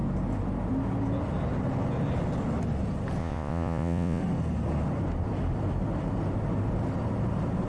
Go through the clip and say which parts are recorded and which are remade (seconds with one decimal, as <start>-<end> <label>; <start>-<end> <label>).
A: 0.0-3.2 recorded; 3.2-4.2 remade; 4.2-7.7 recorded